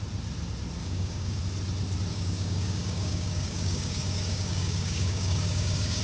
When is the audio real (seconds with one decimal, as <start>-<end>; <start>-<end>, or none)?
0.0-0.8; 1.4-2.1